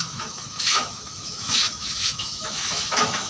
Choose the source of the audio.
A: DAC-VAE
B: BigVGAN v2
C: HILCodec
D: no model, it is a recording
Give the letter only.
A